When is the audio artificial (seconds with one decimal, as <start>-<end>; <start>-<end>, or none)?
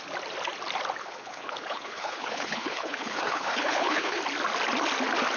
1.0-4.2